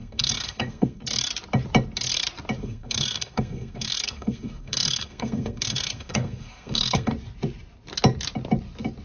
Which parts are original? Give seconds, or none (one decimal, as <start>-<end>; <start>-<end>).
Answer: 1.0-2.6; 7.1-9.0